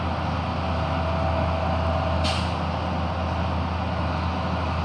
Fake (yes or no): no